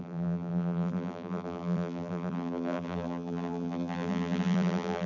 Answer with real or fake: fake